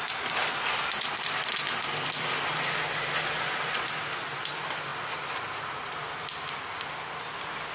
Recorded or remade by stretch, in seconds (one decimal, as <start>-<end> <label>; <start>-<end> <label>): 0.0-7.7 recorded